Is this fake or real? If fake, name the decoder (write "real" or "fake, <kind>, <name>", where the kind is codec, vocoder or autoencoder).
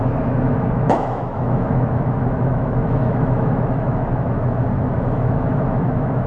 fake, autoencoder, DAC-VAE